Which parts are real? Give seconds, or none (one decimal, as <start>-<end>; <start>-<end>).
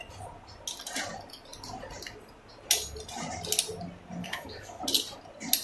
0.0-4.2; 4.8-5.6